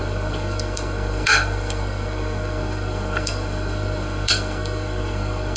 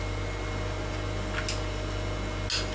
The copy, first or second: first